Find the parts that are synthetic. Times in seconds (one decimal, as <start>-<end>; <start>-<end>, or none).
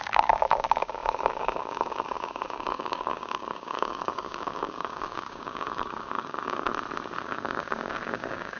0.0-6.7; 7.2-8.6